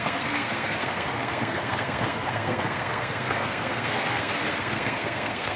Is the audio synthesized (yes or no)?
yes